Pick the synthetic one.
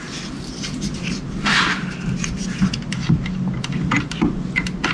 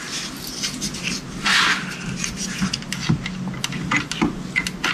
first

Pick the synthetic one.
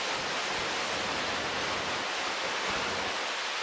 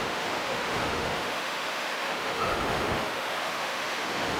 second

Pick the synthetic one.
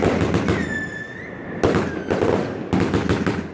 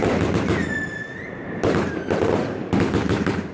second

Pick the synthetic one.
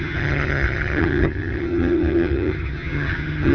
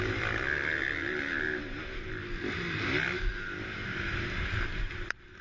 first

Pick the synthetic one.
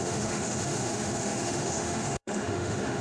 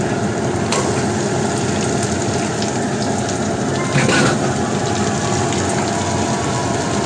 first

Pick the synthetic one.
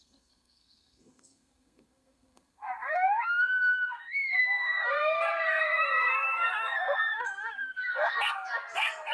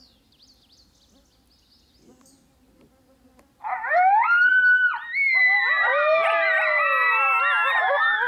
first